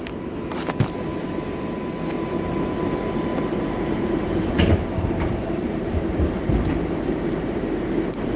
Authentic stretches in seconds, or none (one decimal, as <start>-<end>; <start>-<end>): 0.0-3.3; 6.4-8.4